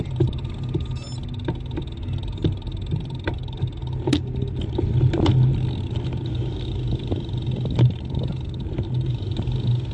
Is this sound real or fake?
real